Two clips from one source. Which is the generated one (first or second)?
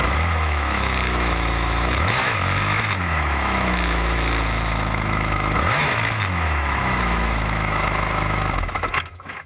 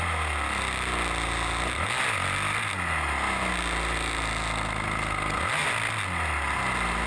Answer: first